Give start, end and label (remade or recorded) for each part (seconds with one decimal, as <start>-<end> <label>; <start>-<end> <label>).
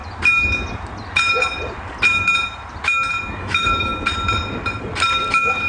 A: 0.0-3.4 recorded; 3.4-3.9 remade; 3.9-5.3 recorded; 5.3-5.7 remade